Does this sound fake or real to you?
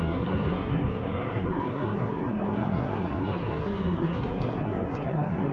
fake